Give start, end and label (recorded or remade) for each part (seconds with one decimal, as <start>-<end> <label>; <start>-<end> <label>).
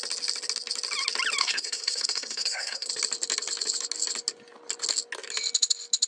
0.0-1.4 recorded; 1.4-2.9 remade; 2.9-6.1 recorded